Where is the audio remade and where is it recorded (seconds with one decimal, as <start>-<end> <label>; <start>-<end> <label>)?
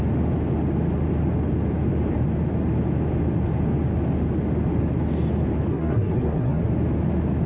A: 0.0-5.7 recorded; 5.7-6.6 remade; 6.6-7.5 recorded